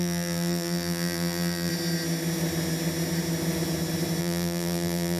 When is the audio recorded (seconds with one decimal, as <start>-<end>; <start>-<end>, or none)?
1.7-4.2